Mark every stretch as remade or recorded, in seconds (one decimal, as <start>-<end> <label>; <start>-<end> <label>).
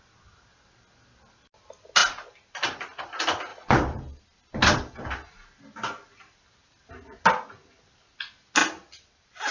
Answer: 0.0-3.5 recorded; 3.5-4.2 remade; 4.2-8.6 recorded; 8.6-9.5 remade